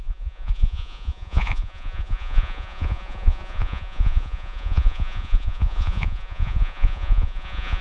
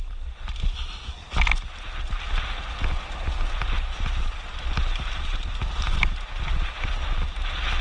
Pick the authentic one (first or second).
second